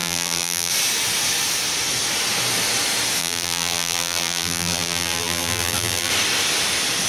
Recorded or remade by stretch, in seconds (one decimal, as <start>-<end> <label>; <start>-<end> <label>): 0.0-0.7 remade; 0.7-3.2 recorded; 3.2-6.1 remade; 6.1-7.1 recorded